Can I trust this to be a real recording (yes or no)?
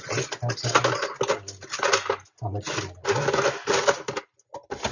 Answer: yes